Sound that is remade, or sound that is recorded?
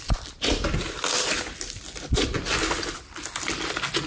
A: recorded